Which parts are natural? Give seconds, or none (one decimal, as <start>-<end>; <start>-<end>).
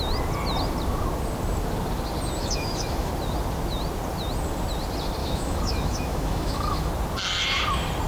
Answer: 0.0-2.4; 3.1-5.2; 6.9-8.1